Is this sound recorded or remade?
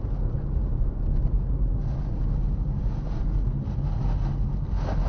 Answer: recorded